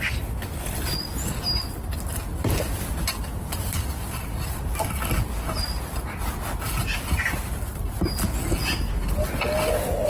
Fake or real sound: real